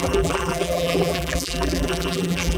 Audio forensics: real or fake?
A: fake